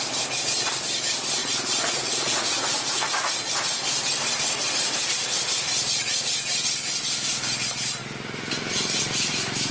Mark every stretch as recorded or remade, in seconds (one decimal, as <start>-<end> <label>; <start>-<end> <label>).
0.0-1.4 recorded; 1.4-3.5 remade; 3.5-9.7 recorded